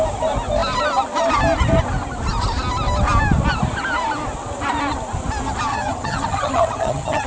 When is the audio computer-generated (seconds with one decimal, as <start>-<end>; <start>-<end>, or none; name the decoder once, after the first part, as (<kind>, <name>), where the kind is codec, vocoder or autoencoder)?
5.7-7.3 (vocoder, HiFi-GAN)